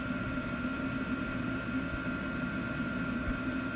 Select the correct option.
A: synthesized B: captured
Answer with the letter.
B